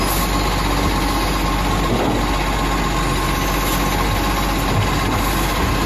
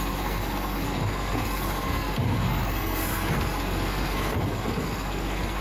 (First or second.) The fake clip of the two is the second